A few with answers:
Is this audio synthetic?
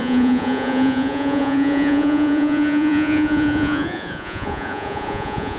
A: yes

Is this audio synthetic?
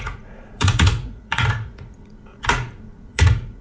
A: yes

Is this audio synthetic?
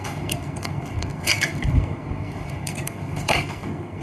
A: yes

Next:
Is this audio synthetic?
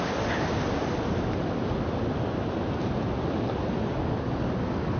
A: no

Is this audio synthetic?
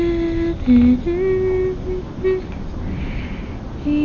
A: no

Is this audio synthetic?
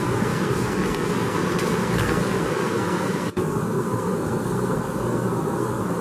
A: yes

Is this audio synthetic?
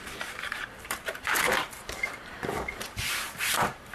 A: yes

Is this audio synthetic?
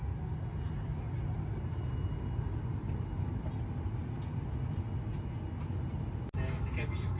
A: no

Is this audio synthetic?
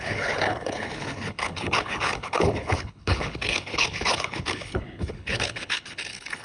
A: yes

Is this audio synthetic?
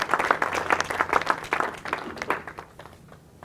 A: no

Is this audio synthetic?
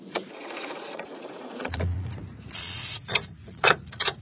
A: yes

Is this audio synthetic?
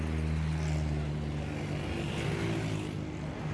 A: no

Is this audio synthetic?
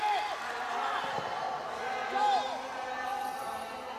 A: no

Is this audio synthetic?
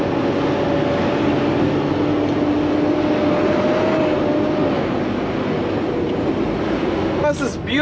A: no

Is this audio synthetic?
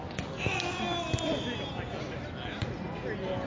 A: no